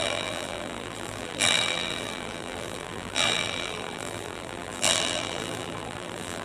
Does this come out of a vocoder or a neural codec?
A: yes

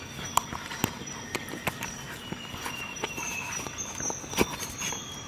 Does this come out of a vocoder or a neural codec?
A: no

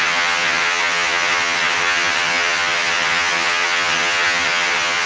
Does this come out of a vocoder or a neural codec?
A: yes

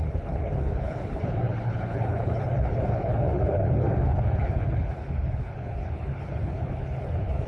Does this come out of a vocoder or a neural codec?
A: yes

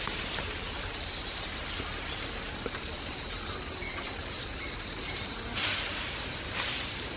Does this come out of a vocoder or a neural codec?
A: yes